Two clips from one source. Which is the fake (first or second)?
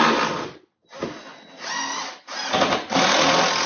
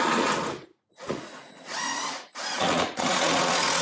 second